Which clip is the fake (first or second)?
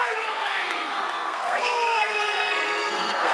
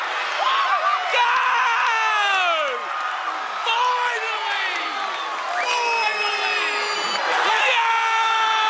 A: first